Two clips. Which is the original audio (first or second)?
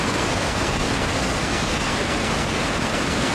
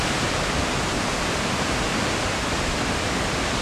second